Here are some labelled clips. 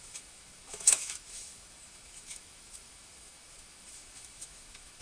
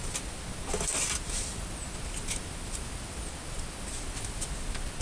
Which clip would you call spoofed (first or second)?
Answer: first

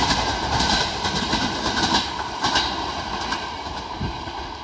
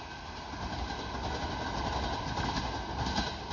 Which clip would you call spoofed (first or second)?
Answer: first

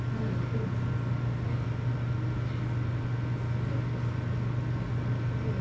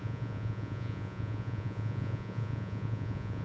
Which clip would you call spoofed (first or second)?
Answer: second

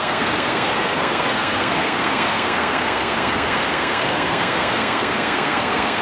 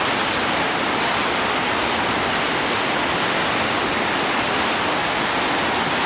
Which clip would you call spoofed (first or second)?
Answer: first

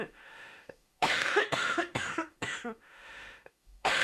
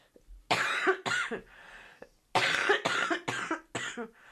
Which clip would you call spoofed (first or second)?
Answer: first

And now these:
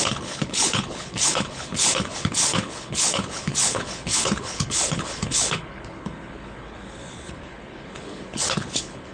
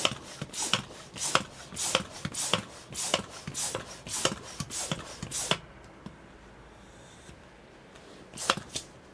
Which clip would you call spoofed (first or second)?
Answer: first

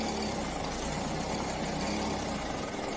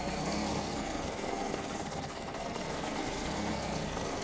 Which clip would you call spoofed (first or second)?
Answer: second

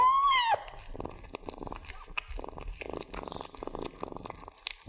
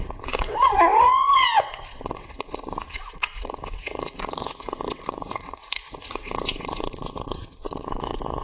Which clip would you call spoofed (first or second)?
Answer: second